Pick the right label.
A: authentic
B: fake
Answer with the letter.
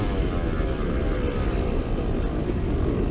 A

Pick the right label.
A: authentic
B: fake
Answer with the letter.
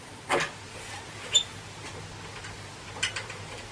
A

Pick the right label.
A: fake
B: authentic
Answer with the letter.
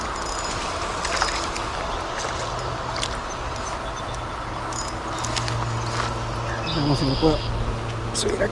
B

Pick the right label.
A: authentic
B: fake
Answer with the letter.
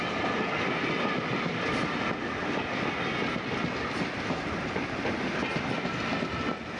A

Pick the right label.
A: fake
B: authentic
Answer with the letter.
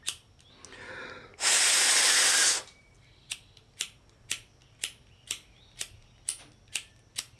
B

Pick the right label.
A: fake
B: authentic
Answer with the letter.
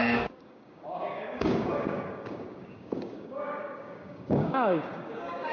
A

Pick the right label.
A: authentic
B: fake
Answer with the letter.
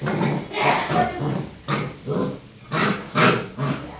A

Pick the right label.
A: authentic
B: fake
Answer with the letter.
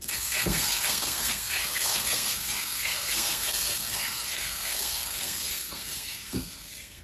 B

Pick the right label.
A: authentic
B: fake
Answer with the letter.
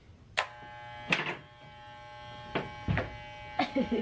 A